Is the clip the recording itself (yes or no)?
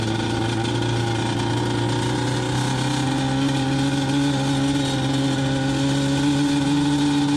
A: yes